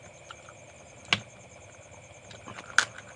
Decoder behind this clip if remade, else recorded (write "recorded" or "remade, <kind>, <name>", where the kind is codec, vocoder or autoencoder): recorded